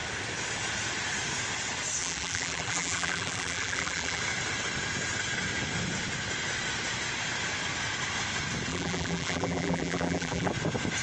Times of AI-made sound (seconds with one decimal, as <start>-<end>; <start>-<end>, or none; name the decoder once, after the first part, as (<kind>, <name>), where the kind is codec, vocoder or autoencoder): 2.0-4.2 (vocoder, BigVGAN v2); 8.7-10.5